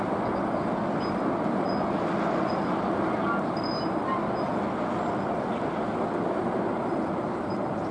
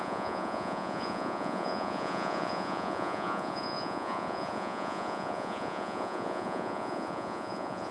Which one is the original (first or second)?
first